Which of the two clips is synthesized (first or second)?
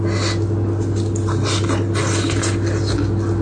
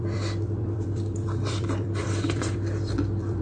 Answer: second